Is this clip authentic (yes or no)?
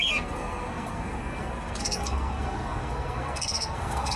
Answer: no